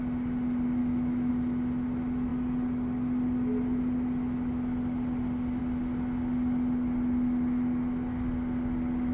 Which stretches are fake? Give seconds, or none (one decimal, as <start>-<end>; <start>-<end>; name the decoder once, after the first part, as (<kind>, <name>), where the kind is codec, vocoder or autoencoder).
0.8-1.3 (autoencoder, DAC-VAE)